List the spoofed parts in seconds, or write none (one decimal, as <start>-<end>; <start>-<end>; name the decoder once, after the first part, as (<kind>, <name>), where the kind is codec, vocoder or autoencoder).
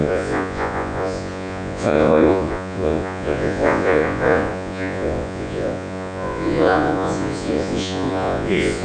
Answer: 0.0-8.8 (vocoder, Vocos)